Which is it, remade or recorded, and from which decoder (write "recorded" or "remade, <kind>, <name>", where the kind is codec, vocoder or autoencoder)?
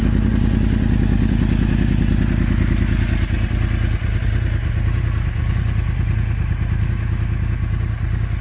recorded